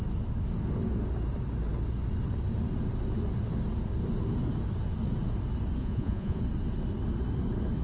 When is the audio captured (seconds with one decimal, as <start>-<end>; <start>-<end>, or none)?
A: 0.0-5.8; 6.4-7.8